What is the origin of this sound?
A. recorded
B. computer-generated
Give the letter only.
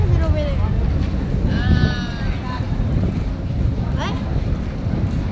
A